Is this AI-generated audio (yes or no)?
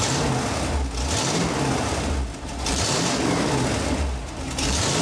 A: no